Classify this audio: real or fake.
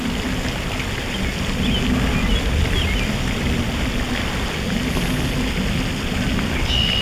real